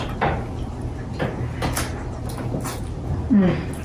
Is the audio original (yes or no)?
yes